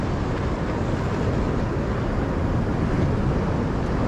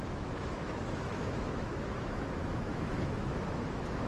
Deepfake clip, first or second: second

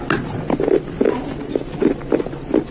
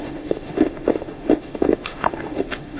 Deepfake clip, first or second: second